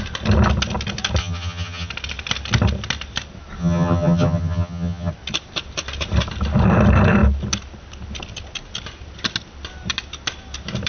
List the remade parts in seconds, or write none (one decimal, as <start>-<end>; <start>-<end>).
1.2-1.9; 3.6-5.1